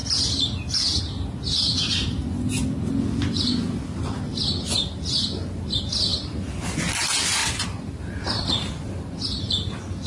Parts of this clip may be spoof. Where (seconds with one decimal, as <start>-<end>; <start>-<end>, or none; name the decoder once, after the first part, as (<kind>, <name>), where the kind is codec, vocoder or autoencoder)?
0.0-1.0 (vocoder, BigVGAN v2); 6.1-6.7; 7.4-9.5